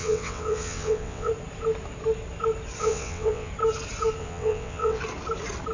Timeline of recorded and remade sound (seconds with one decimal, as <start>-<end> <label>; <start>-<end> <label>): 0.0-1.3 remade; 1.3-2.8 recorded; 2.8-3.5 remade; 3.5-4.2 recorded; 4.2-5.0 remade; 5.0-5.7 recorded